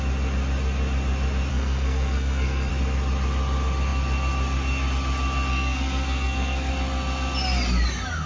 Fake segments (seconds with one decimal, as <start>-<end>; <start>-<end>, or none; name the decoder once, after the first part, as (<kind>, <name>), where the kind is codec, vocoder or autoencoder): 1.5-2.7 (codec, SNAC); 5.5-6.7